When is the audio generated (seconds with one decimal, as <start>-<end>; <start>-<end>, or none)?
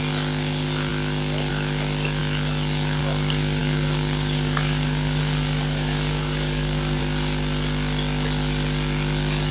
3.6-7.0